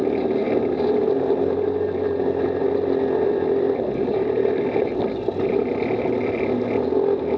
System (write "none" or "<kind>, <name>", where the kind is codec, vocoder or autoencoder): none